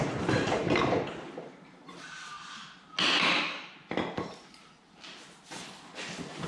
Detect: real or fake real